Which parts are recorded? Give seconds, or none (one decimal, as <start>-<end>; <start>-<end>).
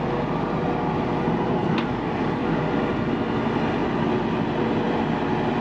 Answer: 0.0-1.6; 2.6-5.6